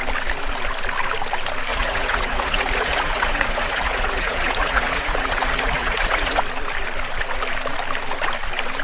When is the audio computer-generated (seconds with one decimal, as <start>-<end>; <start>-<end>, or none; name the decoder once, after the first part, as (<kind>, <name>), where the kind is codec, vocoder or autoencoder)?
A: 1.7-6.4 (vocoder, Vocos)

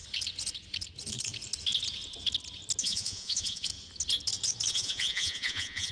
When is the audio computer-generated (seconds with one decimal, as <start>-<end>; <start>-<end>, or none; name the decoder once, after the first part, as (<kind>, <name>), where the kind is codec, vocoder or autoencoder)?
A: 2.8-3.7 (vocoder, Vocos); 4.7-5.9

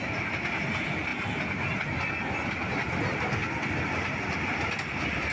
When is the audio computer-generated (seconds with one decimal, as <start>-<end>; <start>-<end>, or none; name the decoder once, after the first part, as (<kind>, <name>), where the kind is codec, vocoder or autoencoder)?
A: none

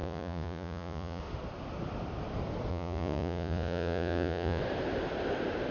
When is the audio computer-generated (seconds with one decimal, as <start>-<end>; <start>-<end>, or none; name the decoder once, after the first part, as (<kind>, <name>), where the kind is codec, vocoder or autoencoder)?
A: 0.0-1.2 (vocoder, Vocos); 2.7-4.6

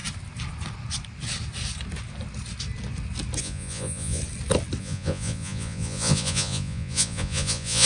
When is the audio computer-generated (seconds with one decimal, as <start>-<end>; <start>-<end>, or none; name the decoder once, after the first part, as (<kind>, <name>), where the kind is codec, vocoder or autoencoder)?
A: 3.4-4.2 (vocoder, Vocos); 4.8-7.9

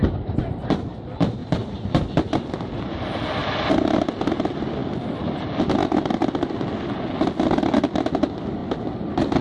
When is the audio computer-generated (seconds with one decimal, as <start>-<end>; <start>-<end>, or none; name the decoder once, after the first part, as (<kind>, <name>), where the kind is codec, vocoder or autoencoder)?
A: none

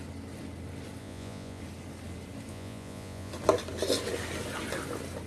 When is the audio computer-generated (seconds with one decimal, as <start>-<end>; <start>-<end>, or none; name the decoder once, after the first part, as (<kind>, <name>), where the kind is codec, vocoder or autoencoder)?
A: 1.0-1.6 (vocoder, Vocos); 2.5-3.3